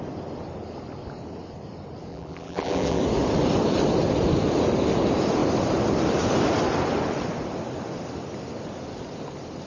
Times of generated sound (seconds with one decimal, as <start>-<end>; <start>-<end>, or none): 2.1-3.0